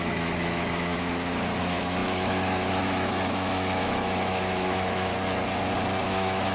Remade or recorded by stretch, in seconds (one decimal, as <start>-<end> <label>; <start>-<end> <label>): 0.0-5.1 remade; 5.1-6.0 recorded; 6.0-6.5 remade